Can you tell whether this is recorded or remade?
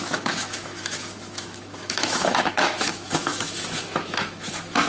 remade